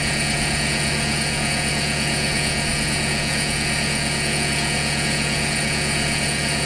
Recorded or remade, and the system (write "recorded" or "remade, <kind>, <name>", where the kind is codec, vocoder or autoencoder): remade, vocoder, Vocos